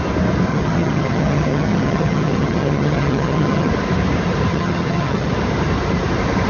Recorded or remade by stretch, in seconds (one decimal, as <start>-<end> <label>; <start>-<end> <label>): 0.0-0.5 recorded; 0.5-3.7 remade; 3.7-4.5 recorded; 4.5-5.3 remade; 5.3-6.5 recorded

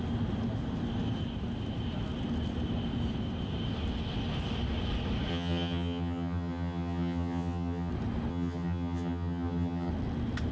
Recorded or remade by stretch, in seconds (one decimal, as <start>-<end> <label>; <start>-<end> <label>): 0.0-5.3 recorded; 5.3-7.9 remade; 7.9-8.3 recorded; 8.3-9.9 remade; 9.9-10.5 recorded

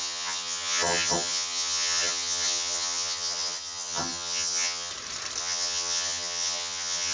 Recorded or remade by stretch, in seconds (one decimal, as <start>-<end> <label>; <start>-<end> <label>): 0.0-4.9 remade; 4.9-5.4 recorded; 5.4-7.1 remade

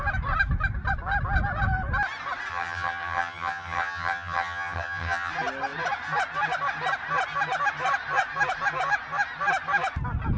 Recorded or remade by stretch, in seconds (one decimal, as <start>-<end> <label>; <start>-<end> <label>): 0.0-2.5 recorded; 2.5-5.3 remade; 5.3-10.4 recorded

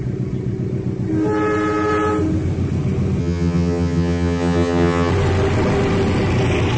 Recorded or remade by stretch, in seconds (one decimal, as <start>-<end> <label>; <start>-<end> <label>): 0.0-3.2 recorded; 3.2-5.1 remade; 5.1-6.8 recorded

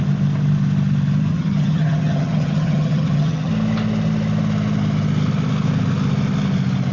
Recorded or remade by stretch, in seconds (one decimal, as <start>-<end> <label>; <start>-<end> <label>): 0.0-1.3 recorded; 1.3-3.5 remade; 3.5-6.9 recorded

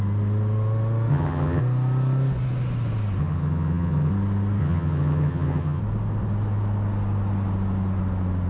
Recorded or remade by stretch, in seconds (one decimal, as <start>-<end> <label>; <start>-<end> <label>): 0.0-1.1 recorded; 1.1-1.6 remade; 1.6-3.2 recorded; 3.2-4.1 remade; 4.1-4.6 recorded; 4.6-5.8 remade; 5.8-8.5 recorded

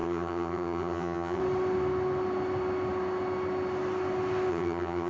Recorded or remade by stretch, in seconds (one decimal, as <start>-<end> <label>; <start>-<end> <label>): 0.0-1.4 remade; 1.4-4.5 recorded; 4.5-5.1 remade